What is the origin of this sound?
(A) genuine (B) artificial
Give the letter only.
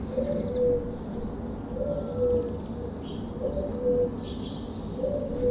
A